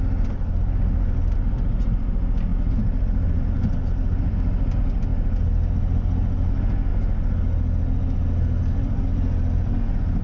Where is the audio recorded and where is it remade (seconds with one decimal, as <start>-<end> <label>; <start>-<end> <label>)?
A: 0.0-10.2 recorded